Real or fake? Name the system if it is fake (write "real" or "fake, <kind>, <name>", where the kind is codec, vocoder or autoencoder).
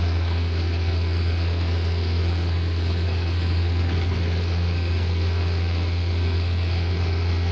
fake, codec, SNAC